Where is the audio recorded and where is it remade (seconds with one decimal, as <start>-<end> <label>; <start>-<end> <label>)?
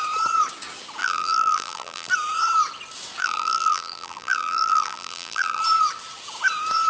0.0-1.0 recorded; 1.0-2.1 remade; 2.1-3.2 recorded; 3.2-5.6 remade; 5.6-6.9 recorded